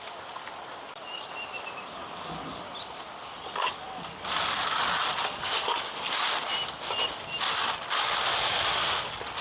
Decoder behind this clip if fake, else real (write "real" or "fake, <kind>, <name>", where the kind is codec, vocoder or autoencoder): real